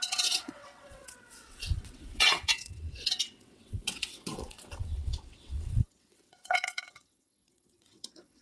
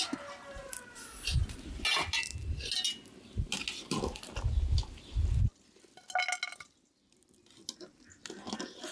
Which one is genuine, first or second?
second